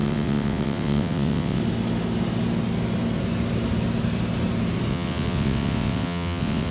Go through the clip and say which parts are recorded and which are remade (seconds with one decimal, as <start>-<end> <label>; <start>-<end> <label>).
0.0-1.6 remade; 1.6-4.9 recorded; 4.9-6.7 remade